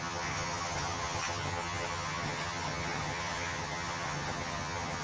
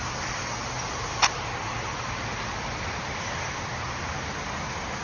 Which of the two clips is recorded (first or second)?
second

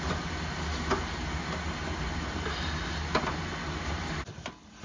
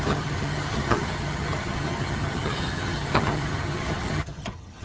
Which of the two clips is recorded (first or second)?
first